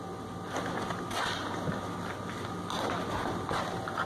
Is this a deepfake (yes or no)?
no